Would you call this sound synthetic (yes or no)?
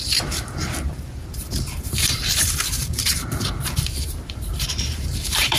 yes